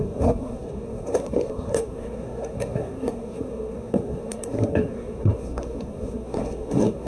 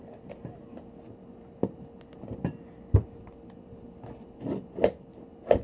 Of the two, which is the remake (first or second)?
first